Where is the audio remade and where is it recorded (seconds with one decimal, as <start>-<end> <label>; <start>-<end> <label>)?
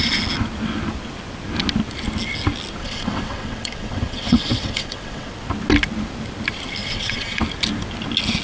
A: 0.0-2.8 recorded; 2.8-5.3 remade; 5.3-6.8 recorded; 6.8-7.4 remade; 7.4-8.4 recorded